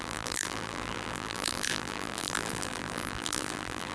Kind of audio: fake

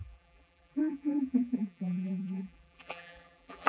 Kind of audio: fake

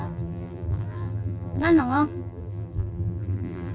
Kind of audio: fake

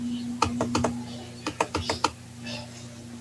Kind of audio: fake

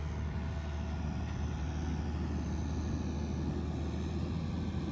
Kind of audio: real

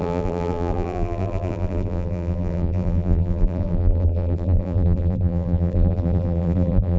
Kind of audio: fake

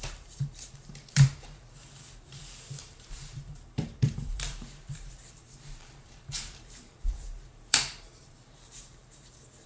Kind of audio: fake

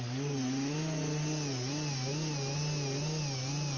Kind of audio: real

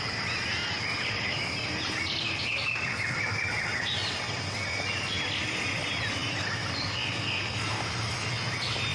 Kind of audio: real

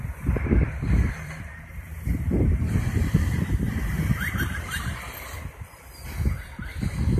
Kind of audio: fake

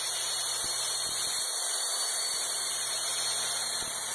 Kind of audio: fake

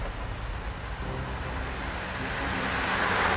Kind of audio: real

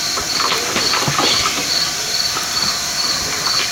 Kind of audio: real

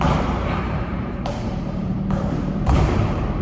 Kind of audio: fake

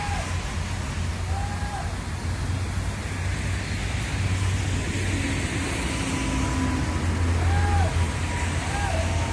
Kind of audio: real